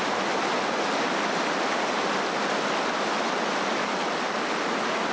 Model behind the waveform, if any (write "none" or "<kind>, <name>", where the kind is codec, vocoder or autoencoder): none